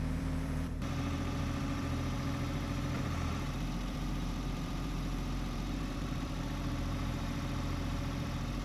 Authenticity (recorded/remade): remade